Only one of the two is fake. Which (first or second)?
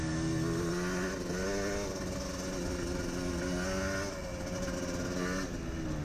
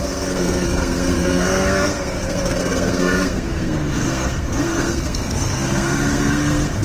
second